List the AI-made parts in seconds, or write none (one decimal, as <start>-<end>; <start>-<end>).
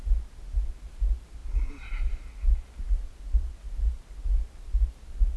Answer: none